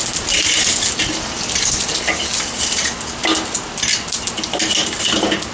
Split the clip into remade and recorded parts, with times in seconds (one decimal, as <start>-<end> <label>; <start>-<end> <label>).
0.0-2.3 recorded; 2.3-4.6 remade; 4.6-5.5 recorded